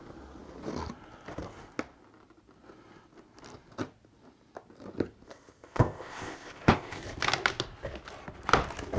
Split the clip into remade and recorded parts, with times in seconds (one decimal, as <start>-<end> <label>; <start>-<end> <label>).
0.0-5.3 recorded; 5.3-7.0 remade; 7.0-9.0 recorded